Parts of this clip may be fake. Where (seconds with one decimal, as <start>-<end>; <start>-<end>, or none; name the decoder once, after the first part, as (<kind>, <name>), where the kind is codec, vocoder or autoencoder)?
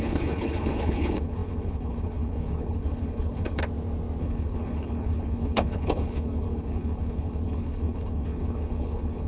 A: 0.0-3.6 (codec, HILCodec); 4.2-9.3